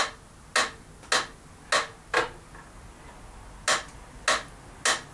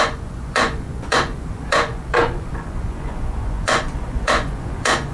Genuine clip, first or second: first